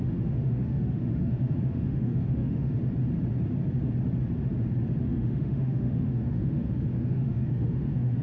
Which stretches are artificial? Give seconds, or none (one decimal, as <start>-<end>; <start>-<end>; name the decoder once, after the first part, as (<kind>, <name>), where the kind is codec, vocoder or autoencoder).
0.0-2.8 (autoencoder, DAC-VAE); 5.0-8.2